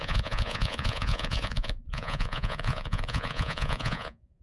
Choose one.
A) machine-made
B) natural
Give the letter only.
A